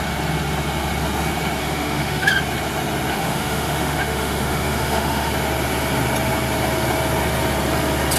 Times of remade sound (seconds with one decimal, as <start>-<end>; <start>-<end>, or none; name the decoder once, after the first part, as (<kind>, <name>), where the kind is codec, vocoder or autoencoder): 1.6-2.3 (autoencoder, DAC-VAE); 3.1-5.3